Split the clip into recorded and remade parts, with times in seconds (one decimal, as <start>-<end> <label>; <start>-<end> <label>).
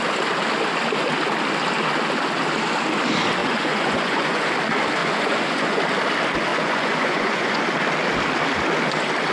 0.0-3.4 recorded; 3.4-4.5 remade; 4.5-5.0 recorded; 5.0-5.8 remade; 5.8-6.5 recorded; 6.5-7.6 remade; 7.6-9.3 recorded